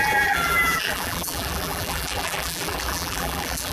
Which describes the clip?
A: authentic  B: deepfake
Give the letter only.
B